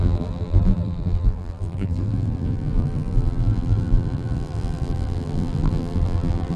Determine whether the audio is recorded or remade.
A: remade